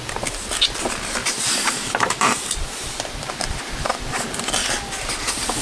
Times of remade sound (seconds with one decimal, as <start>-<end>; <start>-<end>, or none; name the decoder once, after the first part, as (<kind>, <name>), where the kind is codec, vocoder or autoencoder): 1.2-4.5 (vocoder, BigVGAN v2)